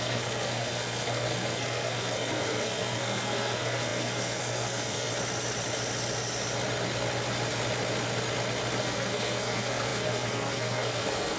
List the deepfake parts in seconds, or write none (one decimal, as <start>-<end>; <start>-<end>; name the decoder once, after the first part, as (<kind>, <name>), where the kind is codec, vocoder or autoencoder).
0.0-5.1 (codec, SNAC); 8.8-11.4

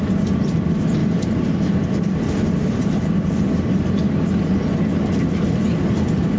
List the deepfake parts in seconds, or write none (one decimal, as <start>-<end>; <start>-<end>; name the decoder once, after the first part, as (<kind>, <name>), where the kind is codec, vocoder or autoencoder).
1.0-4.7 (vocoder, BigVGAN v2)